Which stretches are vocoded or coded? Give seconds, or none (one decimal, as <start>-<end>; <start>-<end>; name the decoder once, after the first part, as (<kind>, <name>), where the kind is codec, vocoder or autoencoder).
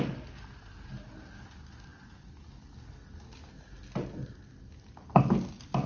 none